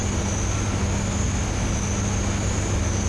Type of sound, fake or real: real